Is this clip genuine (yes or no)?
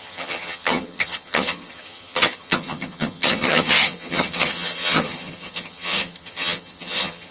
no